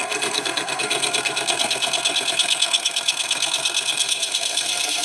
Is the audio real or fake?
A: fake